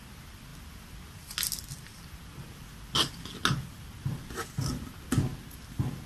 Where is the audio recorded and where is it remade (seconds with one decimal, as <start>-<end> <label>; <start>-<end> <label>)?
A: 0.0-6.1 recorded